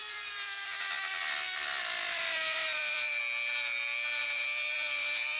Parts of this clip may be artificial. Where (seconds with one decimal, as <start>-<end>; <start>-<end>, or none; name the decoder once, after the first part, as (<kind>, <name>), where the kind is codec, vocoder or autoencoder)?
0.0-3.2 (vocoder, BigVGAN v2); 4.2-5.4